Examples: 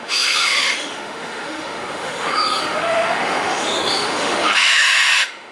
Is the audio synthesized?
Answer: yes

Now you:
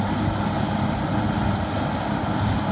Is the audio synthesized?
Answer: no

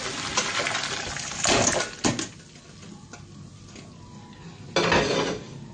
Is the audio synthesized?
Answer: no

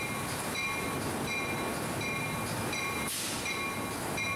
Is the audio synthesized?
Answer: no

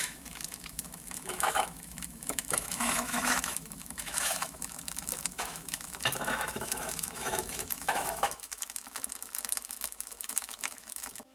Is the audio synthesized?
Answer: yes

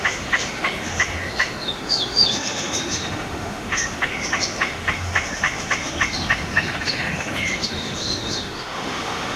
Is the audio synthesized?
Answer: yes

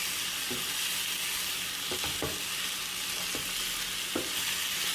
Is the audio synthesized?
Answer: no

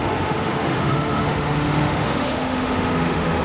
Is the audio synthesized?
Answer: yes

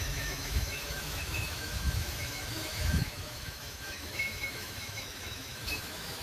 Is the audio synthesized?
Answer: yes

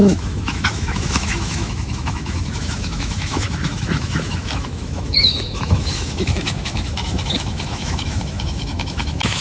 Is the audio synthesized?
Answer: yes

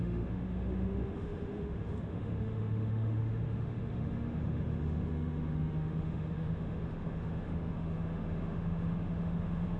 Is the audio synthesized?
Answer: yes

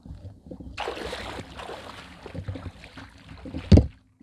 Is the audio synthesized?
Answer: no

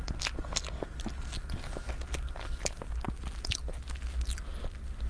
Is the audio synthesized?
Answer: no